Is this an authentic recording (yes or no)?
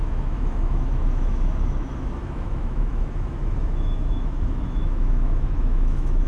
no